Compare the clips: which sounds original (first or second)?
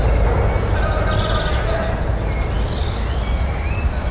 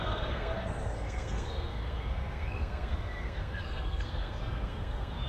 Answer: first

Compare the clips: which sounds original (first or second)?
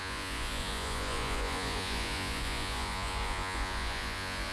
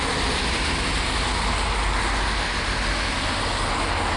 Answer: second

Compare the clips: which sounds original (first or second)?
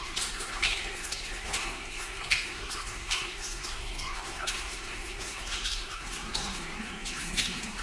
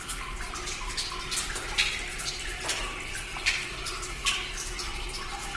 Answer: second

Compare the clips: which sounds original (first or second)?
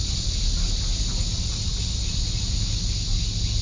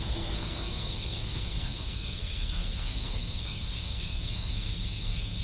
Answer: first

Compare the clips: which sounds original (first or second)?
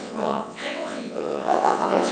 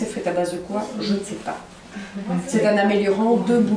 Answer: second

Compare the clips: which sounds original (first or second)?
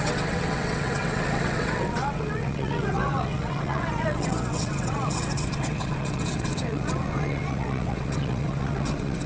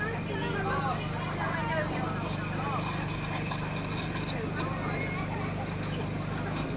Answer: second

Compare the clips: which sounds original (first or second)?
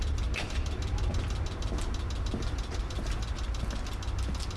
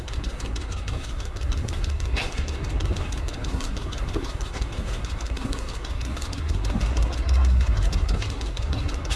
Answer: first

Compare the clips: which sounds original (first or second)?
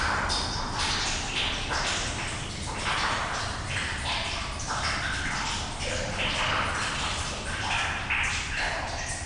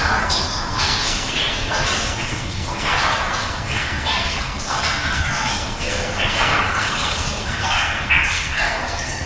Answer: first